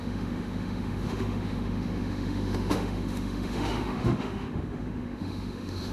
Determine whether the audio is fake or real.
fake